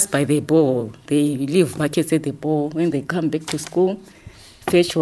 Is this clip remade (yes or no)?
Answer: yes